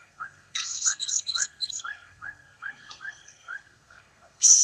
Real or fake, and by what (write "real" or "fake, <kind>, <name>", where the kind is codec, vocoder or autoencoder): fake, codec, SNAC